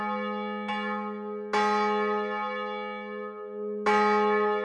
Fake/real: real